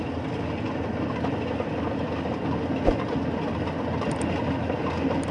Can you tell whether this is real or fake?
real